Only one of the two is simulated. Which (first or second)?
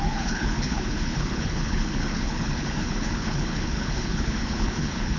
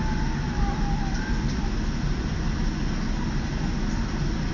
first